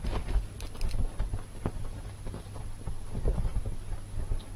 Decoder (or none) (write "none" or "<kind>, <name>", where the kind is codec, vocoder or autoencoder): none